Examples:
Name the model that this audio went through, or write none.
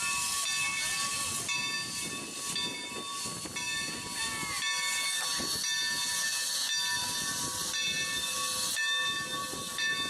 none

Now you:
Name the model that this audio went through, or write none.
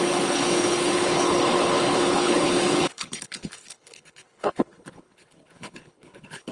codec, HILCodec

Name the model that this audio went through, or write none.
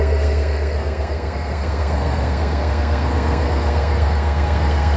codec, SNAC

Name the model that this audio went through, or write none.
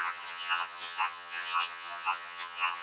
vocoder, HiFi-GAN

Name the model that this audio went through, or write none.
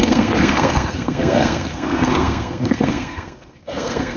codec, SNAC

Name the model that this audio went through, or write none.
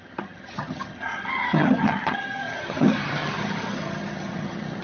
vocoder, HiFi-GAN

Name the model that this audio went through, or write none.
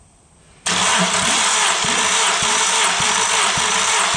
vocoder, BigVGAN v2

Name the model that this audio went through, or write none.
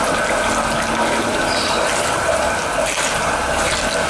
none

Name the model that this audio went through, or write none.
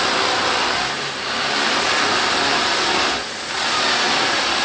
none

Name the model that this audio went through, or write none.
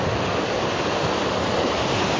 none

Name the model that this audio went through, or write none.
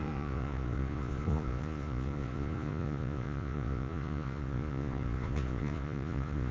vocoder, Vocos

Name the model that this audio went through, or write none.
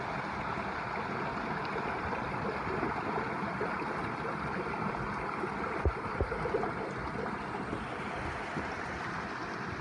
none